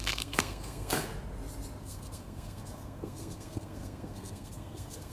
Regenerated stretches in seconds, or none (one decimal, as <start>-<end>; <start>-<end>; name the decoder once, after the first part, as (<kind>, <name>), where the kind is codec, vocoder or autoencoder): 0.0-1.1 (codec, SNAC); 1.8-5.1